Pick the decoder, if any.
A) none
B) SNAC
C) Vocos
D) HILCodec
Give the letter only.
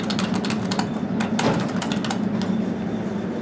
A